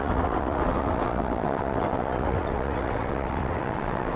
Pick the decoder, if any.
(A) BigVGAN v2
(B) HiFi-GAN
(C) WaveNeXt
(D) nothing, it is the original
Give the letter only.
C